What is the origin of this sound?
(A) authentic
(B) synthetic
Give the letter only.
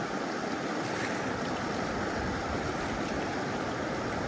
A